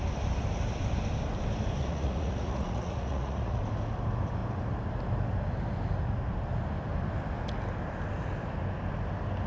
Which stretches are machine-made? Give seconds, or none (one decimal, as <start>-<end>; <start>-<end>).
1.8-3.6